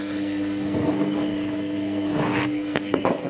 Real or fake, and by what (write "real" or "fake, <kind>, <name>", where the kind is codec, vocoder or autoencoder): fake, codec, SNAC